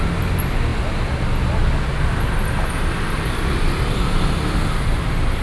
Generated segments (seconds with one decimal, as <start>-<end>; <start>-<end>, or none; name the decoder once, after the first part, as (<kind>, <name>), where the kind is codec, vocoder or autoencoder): none